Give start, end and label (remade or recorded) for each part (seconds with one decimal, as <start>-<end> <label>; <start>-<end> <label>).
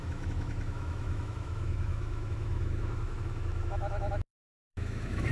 0.0-5.3 remade